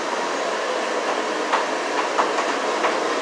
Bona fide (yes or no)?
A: yes